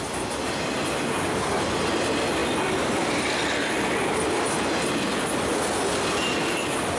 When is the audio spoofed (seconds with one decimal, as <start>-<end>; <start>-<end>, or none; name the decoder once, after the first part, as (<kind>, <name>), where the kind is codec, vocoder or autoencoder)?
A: none